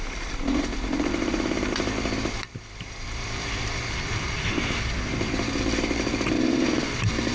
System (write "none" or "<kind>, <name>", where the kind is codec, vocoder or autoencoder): vocoder, BigVGAN v2